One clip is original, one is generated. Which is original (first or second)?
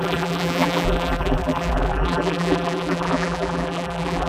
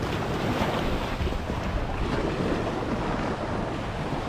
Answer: second